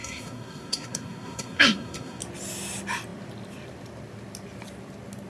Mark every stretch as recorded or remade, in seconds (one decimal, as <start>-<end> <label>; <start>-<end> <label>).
0.0-2.2 remade; 2.2-5.3 recorded